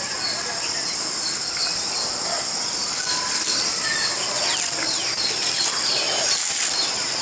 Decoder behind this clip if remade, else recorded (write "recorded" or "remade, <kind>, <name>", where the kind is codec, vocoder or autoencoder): recorded